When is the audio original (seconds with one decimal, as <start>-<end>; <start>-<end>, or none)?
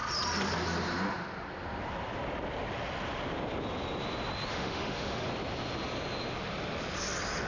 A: 0.0-4.5; 5.3-7.5